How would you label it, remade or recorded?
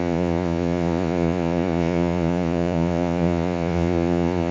remade